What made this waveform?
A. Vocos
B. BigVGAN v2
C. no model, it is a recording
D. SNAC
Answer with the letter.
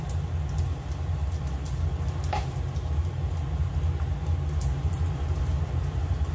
C